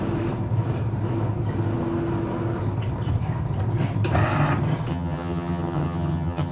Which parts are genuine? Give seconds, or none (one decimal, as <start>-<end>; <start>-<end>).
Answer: 0.0-4.9